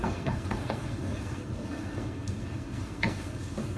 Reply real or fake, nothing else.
fake